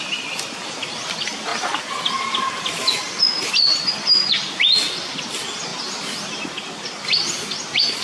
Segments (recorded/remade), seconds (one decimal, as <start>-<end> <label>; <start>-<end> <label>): 0.0-8.0 recorded